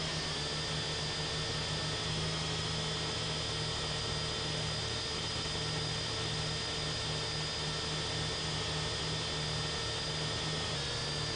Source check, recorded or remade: recorded